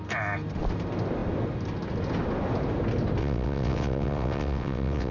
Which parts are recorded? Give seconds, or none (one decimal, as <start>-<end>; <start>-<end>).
0.0-3.2